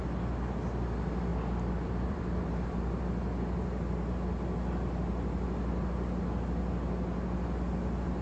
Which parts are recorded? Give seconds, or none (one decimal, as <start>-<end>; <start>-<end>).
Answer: 0.0-1.3; 3.0-8.2